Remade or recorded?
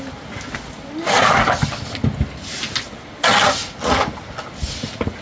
recorded